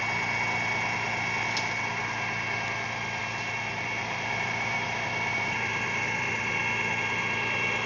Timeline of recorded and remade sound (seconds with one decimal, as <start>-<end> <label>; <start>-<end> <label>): 0.0-3.2 recorded; 3.2-6.6 remade; 6.6-7.9 recorded